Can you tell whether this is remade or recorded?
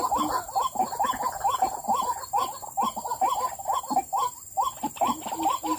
recorded